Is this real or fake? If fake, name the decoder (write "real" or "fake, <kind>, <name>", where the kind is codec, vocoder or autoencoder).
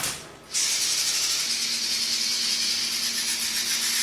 real